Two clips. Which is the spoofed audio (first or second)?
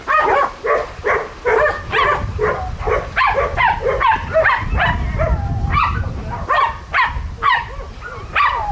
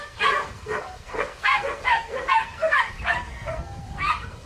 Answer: second